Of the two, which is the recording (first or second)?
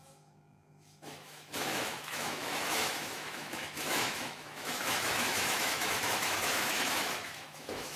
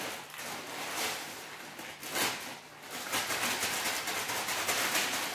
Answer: second